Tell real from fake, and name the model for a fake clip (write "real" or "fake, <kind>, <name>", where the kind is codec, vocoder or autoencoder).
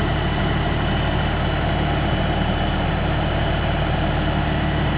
real